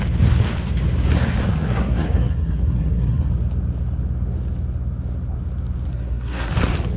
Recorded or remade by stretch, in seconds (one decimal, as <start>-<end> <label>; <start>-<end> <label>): 0.0-1.5 recorded; 1.5-3.3 remade; 3.3-5.9 recorded; 5.9-6.5 remade; 6.5-7.0 recorded

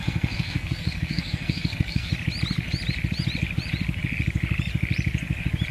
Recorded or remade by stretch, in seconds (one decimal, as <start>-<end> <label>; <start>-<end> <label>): 0.0-2.1 remade; 2.1-5.7 recorded